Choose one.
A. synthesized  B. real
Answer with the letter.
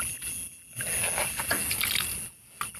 B